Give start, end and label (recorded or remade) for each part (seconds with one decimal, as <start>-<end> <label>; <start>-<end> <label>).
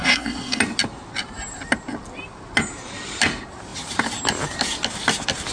0.0-0.6 remade; 0.6-5.5 recorded